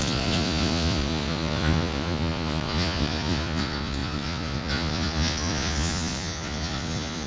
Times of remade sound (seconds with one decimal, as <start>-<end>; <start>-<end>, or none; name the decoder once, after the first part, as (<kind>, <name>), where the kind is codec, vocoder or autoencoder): 0.0-7.3 (vocoder, Vocos)